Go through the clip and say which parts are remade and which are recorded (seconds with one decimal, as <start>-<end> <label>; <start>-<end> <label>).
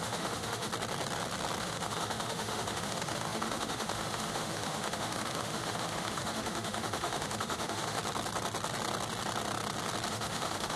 0.0-0.7 remade; 0.7-1.6 recorded; 1.6-8.0 remade; 8.0-10.1 recorded; 10.1-10.8 remade